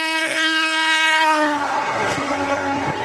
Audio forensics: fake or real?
fake